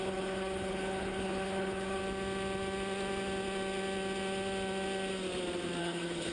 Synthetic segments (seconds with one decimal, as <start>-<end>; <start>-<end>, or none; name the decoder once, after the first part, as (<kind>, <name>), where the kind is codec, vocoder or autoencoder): 0.0-2.0 (codec, HILCodec); 5.8-6.3